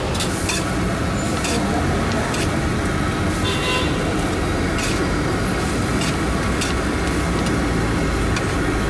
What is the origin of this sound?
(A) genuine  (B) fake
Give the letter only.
A